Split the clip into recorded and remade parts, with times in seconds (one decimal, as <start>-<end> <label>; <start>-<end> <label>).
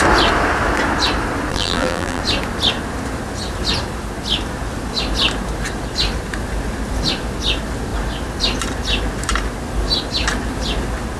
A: 0.0-1.5 recorded; 1.5-2.2 remade; 2.2-11.2 recorded